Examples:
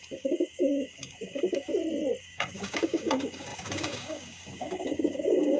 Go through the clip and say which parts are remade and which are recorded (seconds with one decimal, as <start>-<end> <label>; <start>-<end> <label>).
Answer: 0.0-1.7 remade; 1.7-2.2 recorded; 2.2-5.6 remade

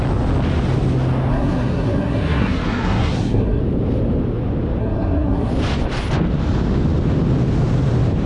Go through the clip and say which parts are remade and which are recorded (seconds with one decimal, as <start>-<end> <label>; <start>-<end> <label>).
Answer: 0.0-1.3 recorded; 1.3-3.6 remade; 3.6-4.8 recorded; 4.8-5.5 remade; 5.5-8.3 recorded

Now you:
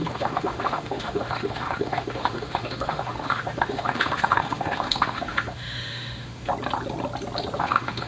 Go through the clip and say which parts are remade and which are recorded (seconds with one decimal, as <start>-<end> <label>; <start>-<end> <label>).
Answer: 0.0-6.5 remade; 6.5-7.6 recorded; 7.6-8.1 remade